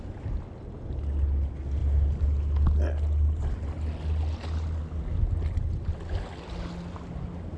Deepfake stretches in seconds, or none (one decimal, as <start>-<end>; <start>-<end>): none